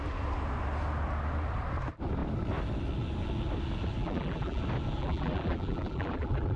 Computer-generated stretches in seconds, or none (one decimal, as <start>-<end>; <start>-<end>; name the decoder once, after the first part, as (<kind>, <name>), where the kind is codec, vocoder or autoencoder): 4.0-4.6 (vocoder, BigVGAN v2); 5.0-6.6